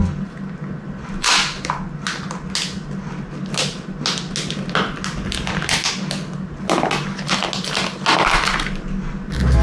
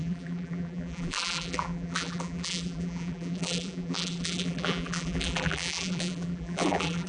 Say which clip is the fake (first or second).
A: second